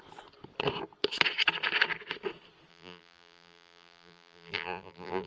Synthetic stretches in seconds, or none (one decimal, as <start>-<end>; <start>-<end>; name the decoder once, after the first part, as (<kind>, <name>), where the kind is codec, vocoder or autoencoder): 2.7-5.3 (vocoder, BigVGAN v2)

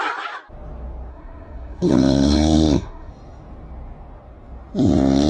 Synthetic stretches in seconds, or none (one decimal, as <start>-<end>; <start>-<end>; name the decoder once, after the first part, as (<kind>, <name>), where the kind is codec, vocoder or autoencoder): 1.1-3.1 (codec, SNAC)

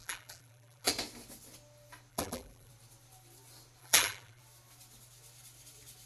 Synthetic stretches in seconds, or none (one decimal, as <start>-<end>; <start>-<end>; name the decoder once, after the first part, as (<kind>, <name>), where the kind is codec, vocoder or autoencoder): 0.0-0.9 (vocoder, BigVGAN v2); 2.1-2.7; 3.8-4.4

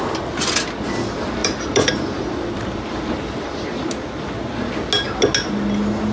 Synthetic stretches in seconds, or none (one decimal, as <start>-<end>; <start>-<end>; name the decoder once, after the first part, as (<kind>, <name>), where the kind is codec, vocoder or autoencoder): 1.4-4.3 (vocoder, BigVGAN v2)